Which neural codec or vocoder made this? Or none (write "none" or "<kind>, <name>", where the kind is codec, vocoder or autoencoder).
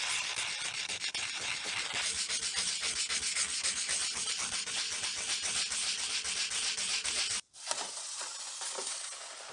none